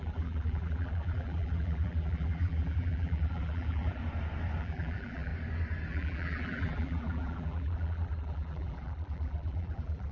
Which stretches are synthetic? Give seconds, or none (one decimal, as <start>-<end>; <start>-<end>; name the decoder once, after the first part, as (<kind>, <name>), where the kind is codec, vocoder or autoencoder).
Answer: 0.0-4.0 (vocoder, BigVGAN v2); 4.6-5.3; 5.9-10.1